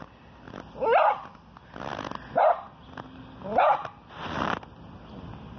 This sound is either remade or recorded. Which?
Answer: recorded